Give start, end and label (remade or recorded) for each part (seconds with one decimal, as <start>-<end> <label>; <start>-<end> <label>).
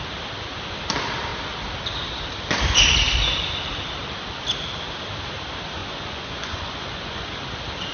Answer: 0.0-5.8 recorded; 5.8-7.3 remade; 7.3-7.9 recorded